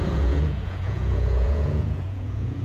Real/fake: fake